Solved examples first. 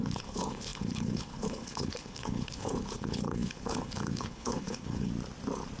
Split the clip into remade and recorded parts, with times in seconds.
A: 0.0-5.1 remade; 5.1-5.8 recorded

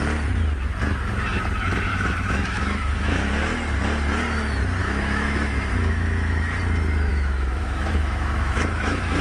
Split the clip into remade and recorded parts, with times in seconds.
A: 0.0-1.9 recorded; 1.9-3.3 remade; 3.3-4.8 recorded; 4.8-6.6 remade; 6.6-7.1 recorded; 7.1-9.2 remade

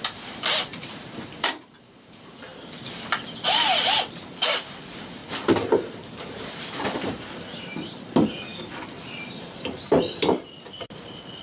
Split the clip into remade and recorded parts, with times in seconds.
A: 0.0-5.2 remade; 5.2-5.9 recorded; 5.9-11.4 remade

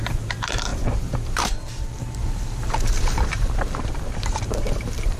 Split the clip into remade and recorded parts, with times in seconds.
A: 0.0-5.2 remade

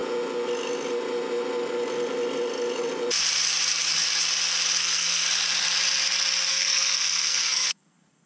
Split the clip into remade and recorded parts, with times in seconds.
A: 0.0-4.8 recorded; 4.8-5.2 remade; 5.2-6.5 recorded; 6.5-8.3 remade